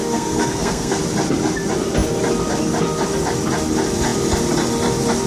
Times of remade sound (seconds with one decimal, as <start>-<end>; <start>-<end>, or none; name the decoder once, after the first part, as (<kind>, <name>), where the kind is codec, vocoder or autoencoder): 0.0-1.0 (codec, SNAC)